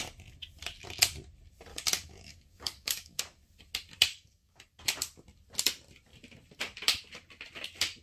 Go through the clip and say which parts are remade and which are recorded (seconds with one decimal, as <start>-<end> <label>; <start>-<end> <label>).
0.0-1.7 recorded; 1.7-3.2 remade; 3.2-4.1 recorded; 4.1-4.8 remade; 4.8-8.0 recorded